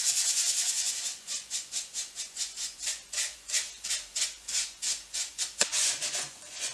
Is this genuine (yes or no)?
no